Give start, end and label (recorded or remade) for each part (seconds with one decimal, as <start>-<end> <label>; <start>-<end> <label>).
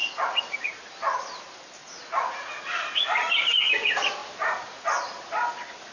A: 0.0-5.9 recorded